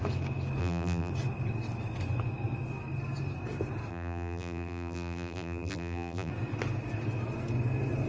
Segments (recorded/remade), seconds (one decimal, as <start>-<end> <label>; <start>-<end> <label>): 0.0-0.6 recorded; 0.6-1.1 remade; 1.1-3.9 recorded; 3.9-6.3 remade; 6.3-8.1 recorded